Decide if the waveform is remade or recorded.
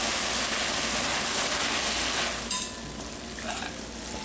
recorded